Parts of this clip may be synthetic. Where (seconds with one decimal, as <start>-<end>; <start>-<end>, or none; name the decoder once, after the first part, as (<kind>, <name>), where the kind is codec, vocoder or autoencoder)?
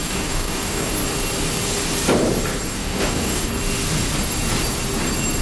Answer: 0.0-0.9 (codec, DAC); 2.7-3.5